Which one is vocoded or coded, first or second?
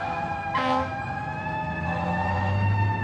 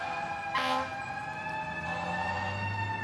first